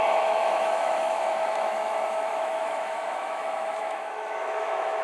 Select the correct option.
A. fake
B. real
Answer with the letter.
A